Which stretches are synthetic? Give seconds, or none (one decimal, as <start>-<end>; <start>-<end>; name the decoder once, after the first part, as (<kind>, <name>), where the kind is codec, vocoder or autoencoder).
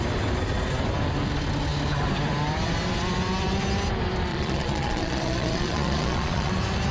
4.3-6.5 (vocoder, Vocos)